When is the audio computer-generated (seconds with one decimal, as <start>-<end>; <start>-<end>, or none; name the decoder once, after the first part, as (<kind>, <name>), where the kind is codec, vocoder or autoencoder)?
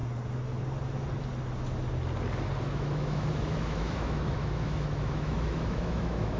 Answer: 2.6-6.4 (autoencoder, DAC-VAE)